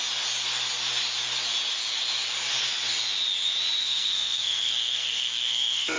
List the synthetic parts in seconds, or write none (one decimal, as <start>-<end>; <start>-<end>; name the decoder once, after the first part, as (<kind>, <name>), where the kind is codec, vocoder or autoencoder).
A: 3.8-6.0 (codec, SNAC)

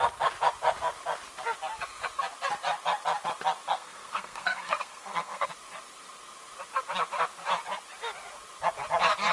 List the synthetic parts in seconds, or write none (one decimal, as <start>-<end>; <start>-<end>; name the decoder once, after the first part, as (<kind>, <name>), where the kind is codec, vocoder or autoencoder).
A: 3.7-5.5 (codec, SNAC)